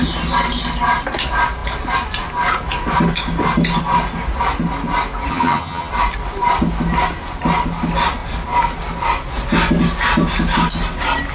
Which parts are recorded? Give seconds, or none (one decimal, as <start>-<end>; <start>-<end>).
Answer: 0.0-5.3; 5.9-11.3